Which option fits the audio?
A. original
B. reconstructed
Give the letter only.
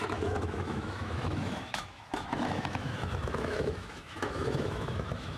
B